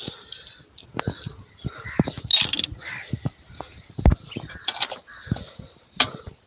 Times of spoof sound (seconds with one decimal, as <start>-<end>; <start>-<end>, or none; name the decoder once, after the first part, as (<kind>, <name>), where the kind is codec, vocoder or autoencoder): none